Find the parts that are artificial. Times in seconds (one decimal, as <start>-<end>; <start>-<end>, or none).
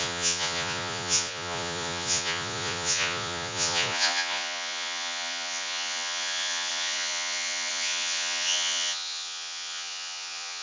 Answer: 0.0-10.6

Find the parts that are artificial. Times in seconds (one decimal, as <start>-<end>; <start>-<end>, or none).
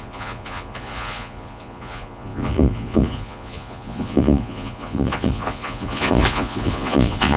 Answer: 0.0-7.4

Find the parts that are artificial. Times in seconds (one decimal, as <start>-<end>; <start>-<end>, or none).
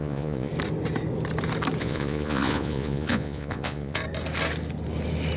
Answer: 0.0-0.5; 1.8-4.0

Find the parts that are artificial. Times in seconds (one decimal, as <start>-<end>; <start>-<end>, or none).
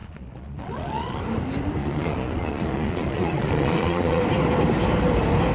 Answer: 0.0-1.2; 1.8-4.2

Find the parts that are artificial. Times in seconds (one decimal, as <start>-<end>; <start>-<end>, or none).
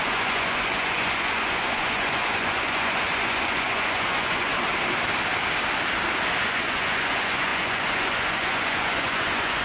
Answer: 0.0-4.5; 6.4-9.6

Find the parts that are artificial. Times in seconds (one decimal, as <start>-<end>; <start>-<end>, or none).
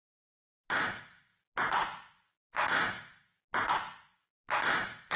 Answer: none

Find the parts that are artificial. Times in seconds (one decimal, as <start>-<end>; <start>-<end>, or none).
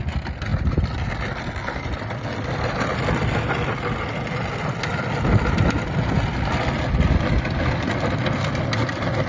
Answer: none